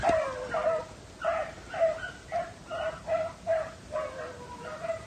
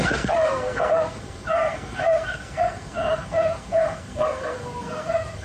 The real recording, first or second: first